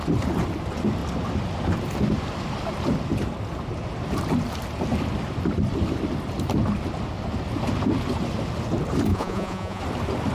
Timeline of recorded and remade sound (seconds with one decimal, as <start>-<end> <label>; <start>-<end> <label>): 0.0-9.1 recorded; 9.1-9.8 remade; 9.8-10.3 recorded